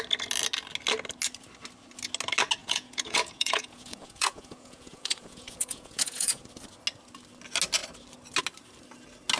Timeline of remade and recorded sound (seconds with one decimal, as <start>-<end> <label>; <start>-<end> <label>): 0.0-2.6 recorded; 2.6-6.4 remade; 6.4-9.4 recorded